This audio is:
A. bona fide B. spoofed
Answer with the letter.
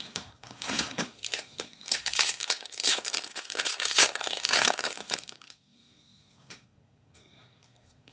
B